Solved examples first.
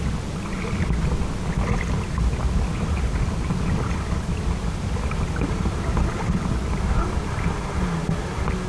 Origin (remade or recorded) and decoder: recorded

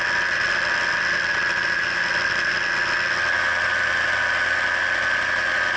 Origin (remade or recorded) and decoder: recorded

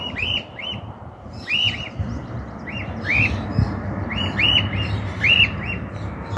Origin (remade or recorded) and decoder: recorded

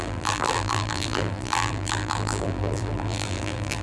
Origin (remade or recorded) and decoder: remade, vocoder, BigVGAN v2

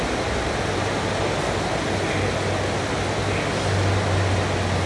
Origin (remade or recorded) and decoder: recorded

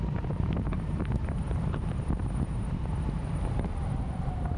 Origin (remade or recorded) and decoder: remade, vocoder, BigVGAN v2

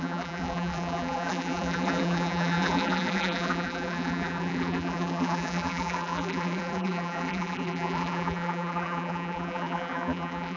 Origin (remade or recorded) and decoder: remade, vocoder, BigVGAN v2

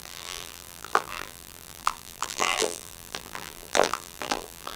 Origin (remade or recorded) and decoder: remade, vocoder, BigVGAN v2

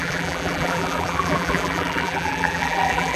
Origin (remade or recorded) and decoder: remade, vocoder, BigVGAN v2